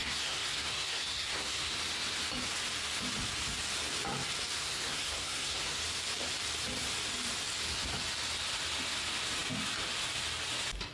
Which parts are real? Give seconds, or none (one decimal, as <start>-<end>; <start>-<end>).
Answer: 1.7-4.6; 5.8-10.9